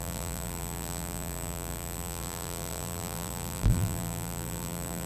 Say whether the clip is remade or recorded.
remade